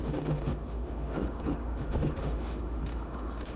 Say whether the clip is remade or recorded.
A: remade